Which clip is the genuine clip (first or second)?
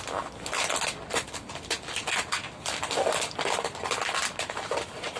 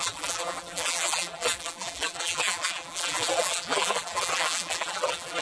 first